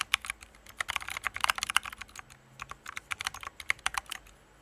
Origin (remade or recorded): recorded